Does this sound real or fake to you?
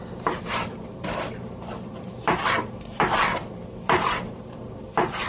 fake